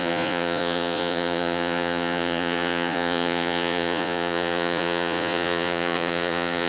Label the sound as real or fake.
fake